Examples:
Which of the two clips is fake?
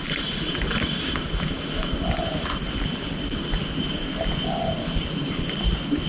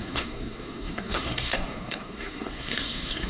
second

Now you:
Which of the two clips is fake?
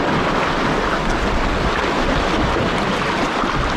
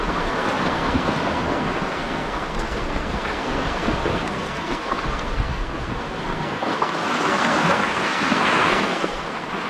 second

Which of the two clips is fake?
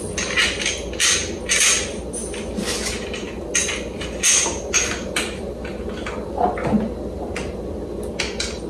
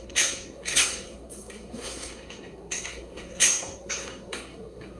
second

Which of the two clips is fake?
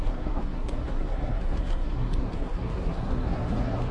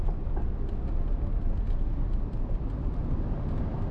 first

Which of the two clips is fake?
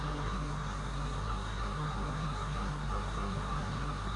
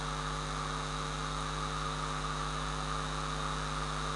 first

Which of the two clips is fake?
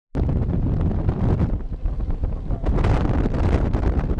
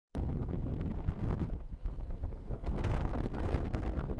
second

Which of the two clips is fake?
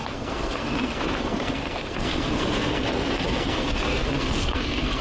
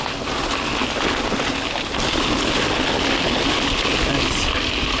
first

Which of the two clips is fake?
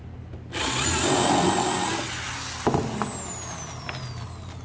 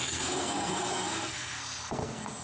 second